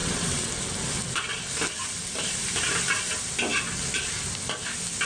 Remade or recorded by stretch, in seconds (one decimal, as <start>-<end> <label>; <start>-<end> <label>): 0.0-0.5 remade; 0.5-5.1 recorded